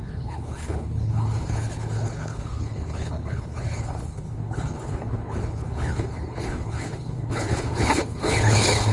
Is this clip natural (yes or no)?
no